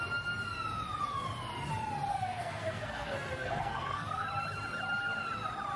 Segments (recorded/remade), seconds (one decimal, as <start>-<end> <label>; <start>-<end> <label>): 0.0-2.1 recorded; 2.1-4.3 remade; 4.3-5.8 recorded